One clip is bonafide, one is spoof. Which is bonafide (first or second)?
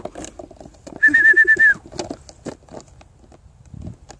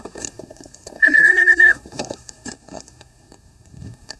first